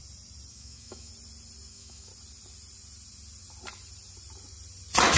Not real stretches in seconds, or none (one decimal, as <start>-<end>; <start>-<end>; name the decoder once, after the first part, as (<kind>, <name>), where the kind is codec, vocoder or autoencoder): 0.5-1.1 (autoencoder, DAC-VAE); 1.7-2.1